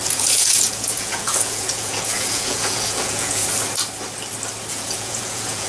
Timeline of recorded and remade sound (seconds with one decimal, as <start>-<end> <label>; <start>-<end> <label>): 0.0-3.4 remade; 3.4-4.7 recorded; 4.7-5.7 remade